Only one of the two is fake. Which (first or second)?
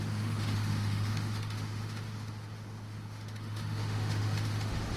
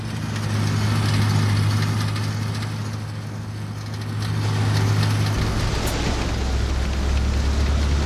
first